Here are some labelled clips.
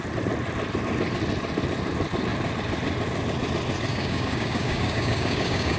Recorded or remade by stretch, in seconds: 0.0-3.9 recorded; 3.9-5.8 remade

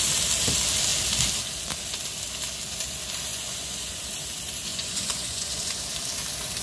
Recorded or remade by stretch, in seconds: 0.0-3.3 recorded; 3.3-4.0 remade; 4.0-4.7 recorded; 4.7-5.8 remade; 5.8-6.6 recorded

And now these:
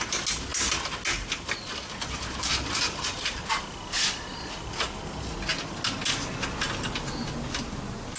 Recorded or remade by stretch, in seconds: 0.0-8.2 recorded

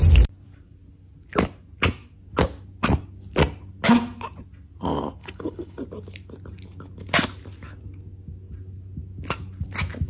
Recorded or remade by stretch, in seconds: 0.0-5.2 recorded; 5.2-5.8 remade; 5.8-10.1 recorded

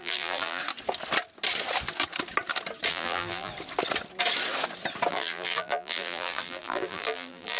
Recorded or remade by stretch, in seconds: 0.0-0.6 remade; 0.6-2.9 recorded; 2.9-3.5 remade; 3.5-5.1 recorded; 5.1-7.6 remade

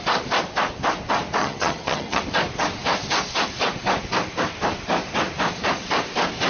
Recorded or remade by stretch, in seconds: 0.0-1.4 recorded; 1.4-2.2 remade; 2.2-6.5 recorded